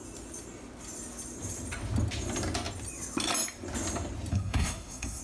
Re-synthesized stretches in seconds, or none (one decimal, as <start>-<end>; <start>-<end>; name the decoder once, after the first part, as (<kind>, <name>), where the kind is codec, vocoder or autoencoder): 4.3-5.2 (codec, SNAC)